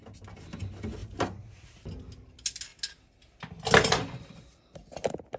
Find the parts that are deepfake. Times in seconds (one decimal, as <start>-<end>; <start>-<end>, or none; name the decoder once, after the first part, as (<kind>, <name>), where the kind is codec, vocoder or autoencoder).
none

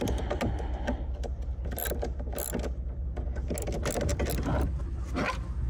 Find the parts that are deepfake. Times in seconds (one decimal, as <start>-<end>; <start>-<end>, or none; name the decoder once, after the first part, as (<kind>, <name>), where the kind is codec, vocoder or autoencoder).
none

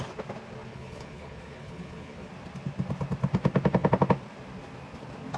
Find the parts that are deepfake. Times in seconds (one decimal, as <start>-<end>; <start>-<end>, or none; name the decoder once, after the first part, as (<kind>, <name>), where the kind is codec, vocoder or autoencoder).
0.7-2.3 (codec, HILCodec)

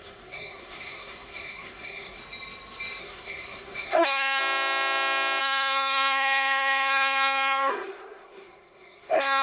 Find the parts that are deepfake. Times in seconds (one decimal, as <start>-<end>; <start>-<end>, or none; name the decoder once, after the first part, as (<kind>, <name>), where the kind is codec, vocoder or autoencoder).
0.0-2.2 (codec, SNAC); 3.0-4.4; 5.4-9.4

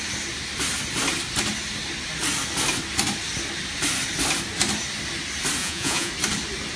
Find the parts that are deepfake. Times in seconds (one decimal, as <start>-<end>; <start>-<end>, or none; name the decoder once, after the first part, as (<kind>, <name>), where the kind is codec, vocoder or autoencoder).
5.6-6.1 (vocoder, Vocos)

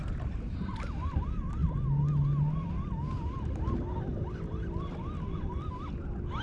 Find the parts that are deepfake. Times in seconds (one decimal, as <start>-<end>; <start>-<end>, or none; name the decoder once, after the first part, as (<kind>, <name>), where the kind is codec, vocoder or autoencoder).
4.1-5.7 (vocoder, BigVGAN v2)